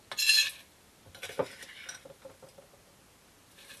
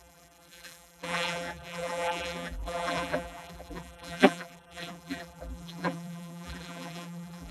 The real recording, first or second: first